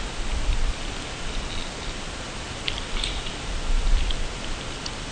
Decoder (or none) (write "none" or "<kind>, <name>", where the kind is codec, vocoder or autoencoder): none